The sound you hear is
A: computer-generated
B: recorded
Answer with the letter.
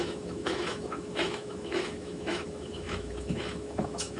A